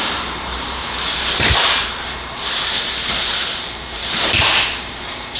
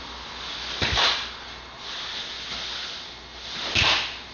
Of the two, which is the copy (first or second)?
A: first